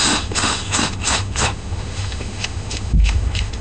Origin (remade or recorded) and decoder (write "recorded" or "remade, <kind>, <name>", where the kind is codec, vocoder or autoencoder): remade, autoencoder, DAC-VAE